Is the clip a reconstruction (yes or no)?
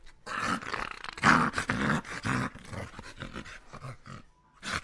no